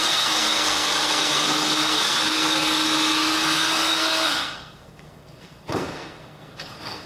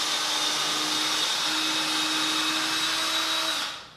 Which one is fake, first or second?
first